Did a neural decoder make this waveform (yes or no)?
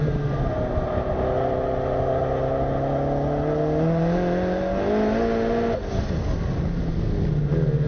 no